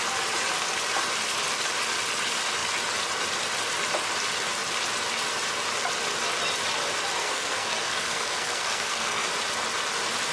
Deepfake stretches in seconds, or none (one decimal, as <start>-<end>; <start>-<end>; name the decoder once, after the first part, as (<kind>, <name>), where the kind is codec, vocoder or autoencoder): 7.2-9.3 (codec, SNAC)